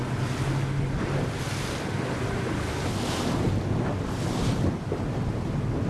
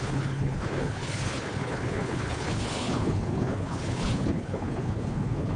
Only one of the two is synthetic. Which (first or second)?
second